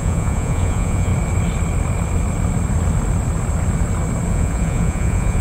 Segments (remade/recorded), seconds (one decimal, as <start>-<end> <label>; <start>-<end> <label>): 0.0-1.1 remade; 1.1-4.3 recorded; 4.3-5.4 remade